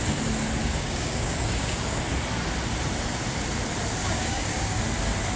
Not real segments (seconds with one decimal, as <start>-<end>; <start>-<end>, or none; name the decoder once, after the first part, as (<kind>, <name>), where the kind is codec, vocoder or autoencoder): 0.6-2.0 (codec, DAC); 4.0-4.8